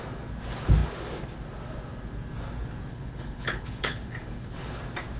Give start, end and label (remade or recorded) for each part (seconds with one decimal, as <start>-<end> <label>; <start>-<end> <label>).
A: 0.0-2.9 recorded; 2.9-4.8 remade; 4.8-5.2 recorded